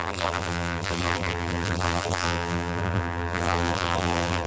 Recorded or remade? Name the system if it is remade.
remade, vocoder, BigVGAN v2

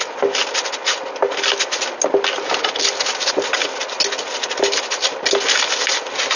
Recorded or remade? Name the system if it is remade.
recorded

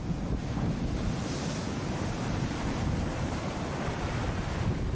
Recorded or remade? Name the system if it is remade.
remade, vocoder, BigVGAN v2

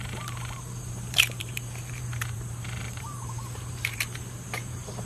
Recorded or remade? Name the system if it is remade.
remade, vocoder, BigVGAN v2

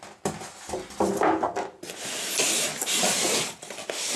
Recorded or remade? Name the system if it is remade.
recorded